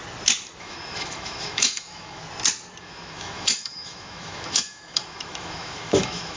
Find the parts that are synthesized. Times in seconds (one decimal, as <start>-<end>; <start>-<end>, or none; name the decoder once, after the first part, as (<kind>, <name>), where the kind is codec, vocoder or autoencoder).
0.6-2.2 (autoencoder, DAC-VAE); 2.8-6.4

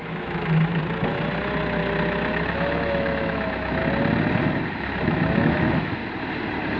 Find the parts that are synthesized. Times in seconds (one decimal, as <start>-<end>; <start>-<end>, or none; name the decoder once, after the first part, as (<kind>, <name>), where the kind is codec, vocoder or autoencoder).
0.0-0.8 (autoencoder, DAC-VAE); 2.3-3.8; 4.7-6.0

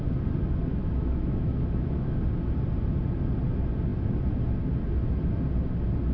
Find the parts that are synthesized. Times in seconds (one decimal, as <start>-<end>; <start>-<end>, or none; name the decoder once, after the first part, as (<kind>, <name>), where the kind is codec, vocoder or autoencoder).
0.7-2.2 (autoencoder, DAC-VAE)

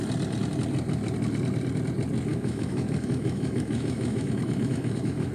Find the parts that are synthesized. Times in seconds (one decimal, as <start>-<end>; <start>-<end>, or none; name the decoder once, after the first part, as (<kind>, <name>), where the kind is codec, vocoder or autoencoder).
2.3-5.3 (autoencoder, DAC-VAE)

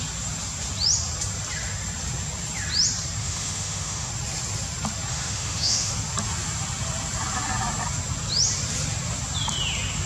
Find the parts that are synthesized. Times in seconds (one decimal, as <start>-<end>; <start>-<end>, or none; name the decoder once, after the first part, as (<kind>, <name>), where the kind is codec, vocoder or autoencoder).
3.2-4.1 (autoencoder, DAC-VAE); 5.1-5.9

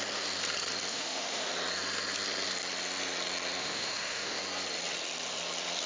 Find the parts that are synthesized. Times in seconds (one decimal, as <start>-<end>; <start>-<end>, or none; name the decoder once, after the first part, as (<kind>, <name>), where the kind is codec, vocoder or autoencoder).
0.9-1.5 (autoencoder, DAC-VAE); 3.6-4.4

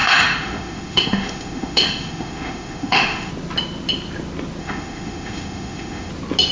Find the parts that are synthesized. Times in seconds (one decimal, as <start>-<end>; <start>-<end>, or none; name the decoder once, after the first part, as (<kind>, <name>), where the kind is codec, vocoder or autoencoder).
0.0-3.3 (autoencoder, DAC-VAE); 4.6-6.1

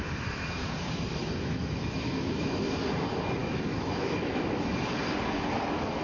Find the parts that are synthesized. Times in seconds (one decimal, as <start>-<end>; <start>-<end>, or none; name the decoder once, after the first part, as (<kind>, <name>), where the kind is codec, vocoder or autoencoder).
1.2-2.6 (autoencoder, DAC-VAE); 3.4-4.7